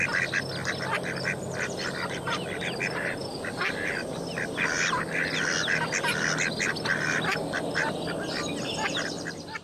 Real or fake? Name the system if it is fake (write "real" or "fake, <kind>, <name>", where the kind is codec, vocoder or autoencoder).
real